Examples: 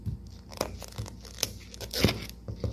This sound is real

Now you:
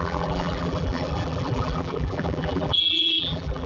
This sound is fake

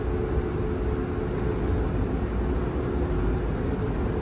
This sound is real